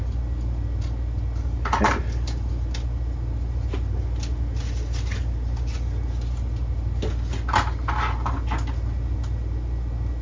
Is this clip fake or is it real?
real